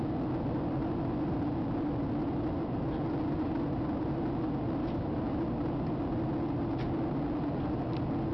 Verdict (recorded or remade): recorded